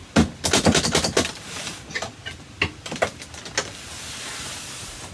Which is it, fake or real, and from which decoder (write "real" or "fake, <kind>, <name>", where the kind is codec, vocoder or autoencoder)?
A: real